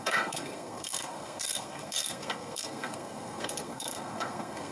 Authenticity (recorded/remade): remade